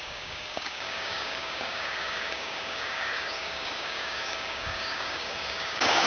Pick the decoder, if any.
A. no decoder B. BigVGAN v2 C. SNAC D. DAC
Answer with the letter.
D